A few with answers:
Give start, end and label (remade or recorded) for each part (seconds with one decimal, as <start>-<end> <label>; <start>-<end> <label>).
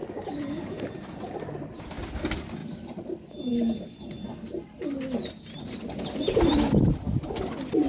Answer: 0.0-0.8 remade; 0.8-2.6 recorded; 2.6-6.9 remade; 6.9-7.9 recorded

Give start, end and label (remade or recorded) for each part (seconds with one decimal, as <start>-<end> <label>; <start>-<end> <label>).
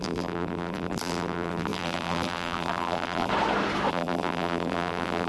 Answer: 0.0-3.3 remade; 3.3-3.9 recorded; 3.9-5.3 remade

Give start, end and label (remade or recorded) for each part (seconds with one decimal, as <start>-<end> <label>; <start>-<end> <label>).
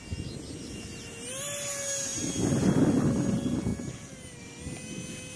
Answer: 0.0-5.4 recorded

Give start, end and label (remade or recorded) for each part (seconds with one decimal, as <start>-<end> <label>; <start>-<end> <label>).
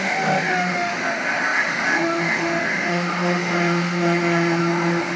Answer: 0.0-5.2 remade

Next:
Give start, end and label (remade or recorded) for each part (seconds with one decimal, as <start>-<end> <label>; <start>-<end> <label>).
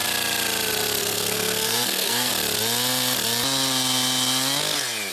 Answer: 0.0-1.0 recorded; 1.0-2.3 remade; 2.3-5.1 recorded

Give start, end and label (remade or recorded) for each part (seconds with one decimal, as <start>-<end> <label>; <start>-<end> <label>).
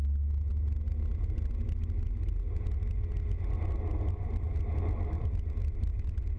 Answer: 0.0-6.4 recorded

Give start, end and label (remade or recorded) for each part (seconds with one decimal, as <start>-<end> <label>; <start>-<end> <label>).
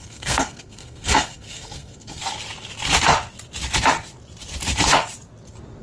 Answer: 0.0-2.2 remade; 2.2-5.8 recorded